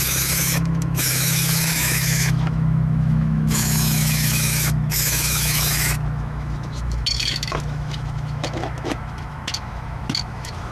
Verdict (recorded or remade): remade